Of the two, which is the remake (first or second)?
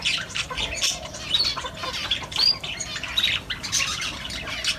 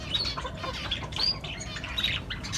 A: first